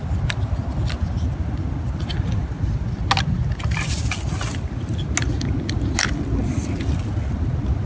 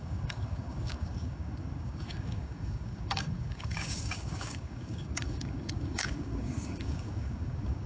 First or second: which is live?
first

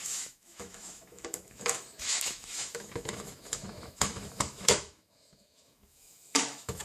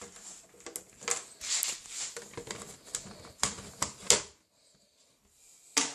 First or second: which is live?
second